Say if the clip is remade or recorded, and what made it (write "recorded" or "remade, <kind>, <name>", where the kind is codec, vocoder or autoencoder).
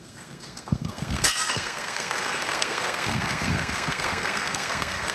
remade, codec, SNAC